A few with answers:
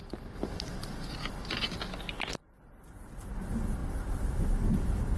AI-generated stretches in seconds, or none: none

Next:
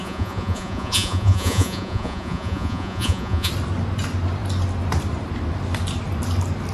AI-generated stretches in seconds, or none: 0.0-3.5

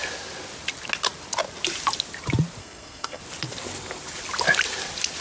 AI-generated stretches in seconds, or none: 2.6-3.2